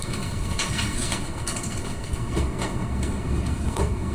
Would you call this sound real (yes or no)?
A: no